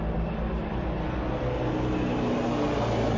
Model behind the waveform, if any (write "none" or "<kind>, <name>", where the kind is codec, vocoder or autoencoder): none